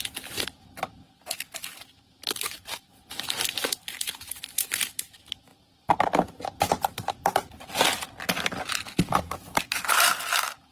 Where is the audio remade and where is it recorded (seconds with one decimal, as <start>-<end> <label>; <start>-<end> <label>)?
0.0-5.5 recorded; 5.5-6.1 remade; 6.1-10.7 recorded